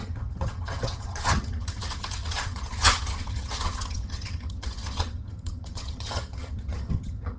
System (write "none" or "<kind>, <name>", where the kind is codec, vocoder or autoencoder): vocoder, HiFi-GAN